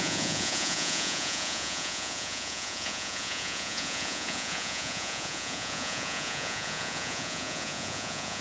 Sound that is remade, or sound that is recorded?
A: remade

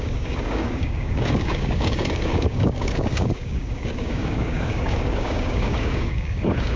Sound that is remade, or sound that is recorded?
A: remade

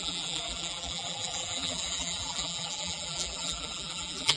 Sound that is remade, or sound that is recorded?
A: remade